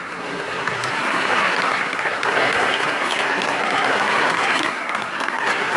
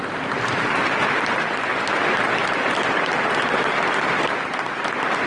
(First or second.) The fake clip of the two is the first